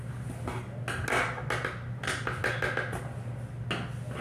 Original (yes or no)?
yes